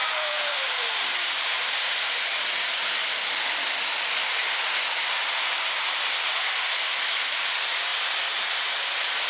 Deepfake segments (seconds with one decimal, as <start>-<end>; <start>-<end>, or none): 0.0-2.0